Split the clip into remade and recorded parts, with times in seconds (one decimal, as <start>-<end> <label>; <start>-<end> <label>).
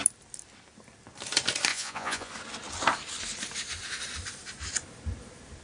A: 0.0-1.7 recorded; 1.7-2.3 remade; 2.3-5.6 recorded